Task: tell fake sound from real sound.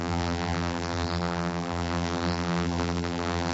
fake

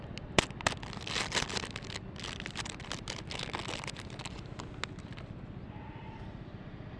real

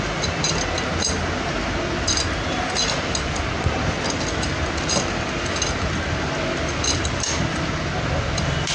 real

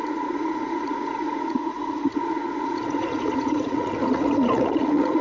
fake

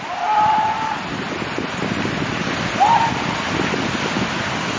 real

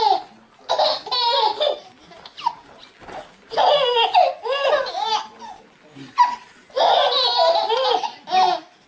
real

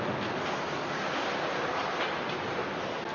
real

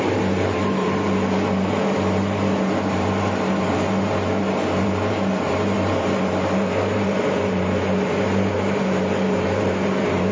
fake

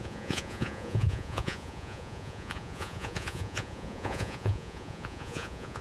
fake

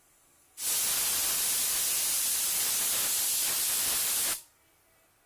real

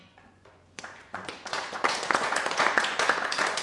fake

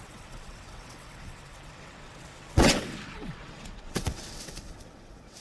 fake